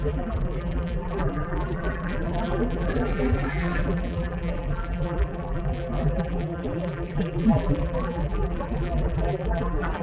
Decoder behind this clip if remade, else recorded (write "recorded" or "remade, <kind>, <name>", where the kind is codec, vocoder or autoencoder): remade, vocoder, BigVGAN v2